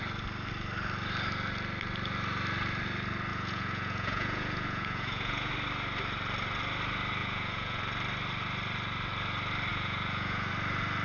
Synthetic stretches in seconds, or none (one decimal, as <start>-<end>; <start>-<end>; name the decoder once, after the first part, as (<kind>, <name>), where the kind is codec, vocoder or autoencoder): 3.3-5.5 (vocoder, Vocos); 7.2-7.8; 9.7-10.5